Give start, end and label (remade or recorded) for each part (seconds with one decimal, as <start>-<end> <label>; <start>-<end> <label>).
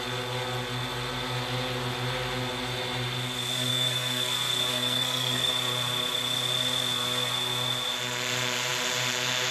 0.0-3.7 recorded; 3.7-4.3 remade; 4.3-4.7 recorded; 4.7-5.5 remade; 5.5-9.5 recorded